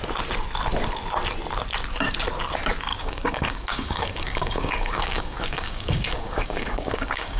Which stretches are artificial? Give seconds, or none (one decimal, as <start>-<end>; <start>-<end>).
2.9-7.4

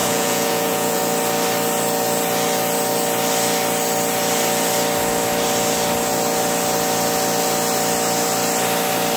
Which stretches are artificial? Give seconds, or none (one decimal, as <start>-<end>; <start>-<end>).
0.0-1.0